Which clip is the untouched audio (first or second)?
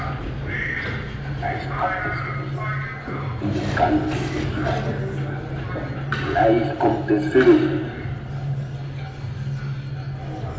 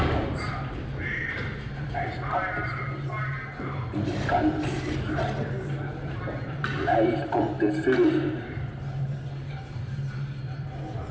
first